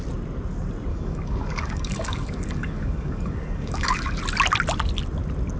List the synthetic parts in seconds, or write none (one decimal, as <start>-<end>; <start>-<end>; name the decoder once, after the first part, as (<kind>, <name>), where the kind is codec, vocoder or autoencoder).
0.9-4.2 (codec, DAC)